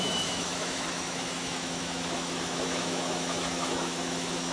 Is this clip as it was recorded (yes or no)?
no